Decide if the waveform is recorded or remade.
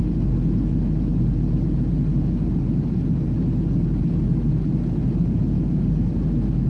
recorded